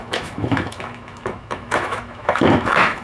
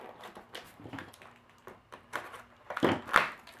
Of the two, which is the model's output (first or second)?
first